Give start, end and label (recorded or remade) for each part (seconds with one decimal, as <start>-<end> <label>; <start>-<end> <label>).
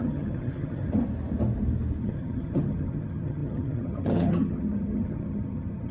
0.0-1.0 remade; 1.0-2.0 recorded; 2.0-5.9 remade